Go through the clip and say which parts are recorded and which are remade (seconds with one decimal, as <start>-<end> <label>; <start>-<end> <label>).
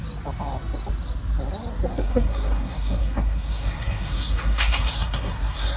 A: 0.0-1.9 recorded; 1.9-5.8 remade